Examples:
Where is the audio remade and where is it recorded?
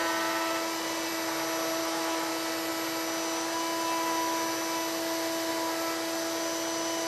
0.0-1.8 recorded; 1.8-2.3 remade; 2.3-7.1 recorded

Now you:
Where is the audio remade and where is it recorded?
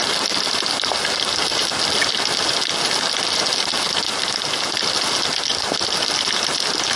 0.0-7.0 recorded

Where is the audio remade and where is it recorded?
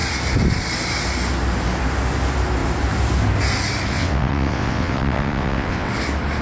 0.0-3.9 recorded; 3.9-5.9 remade; 5.9-6.4 recorded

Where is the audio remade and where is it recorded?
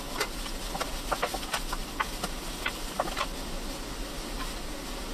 0.0-5.1 recorded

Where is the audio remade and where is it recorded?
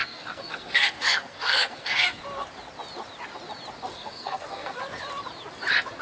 0.0-2.2 remade; 2.2-3.9 recorded; 3.9-4.8 remade; 4.8-6.0 recorded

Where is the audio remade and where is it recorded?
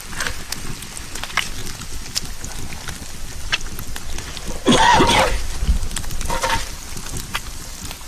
0.0-8.1 recorded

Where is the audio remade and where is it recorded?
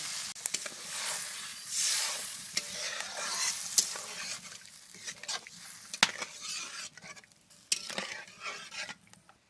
0.0-1.5 recorded; 1.5-2.5 remade; 2.5-9.5 recorded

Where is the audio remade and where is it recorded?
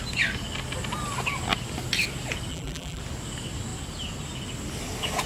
0.0-2.5 recorded; 2.5-3.0 remade; 3.0-5.3 recorded